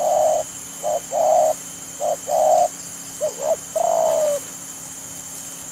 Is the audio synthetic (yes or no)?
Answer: yes